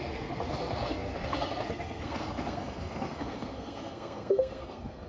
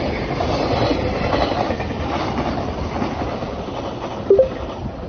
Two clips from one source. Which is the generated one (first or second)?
first